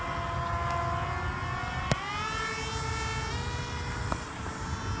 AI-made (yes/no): no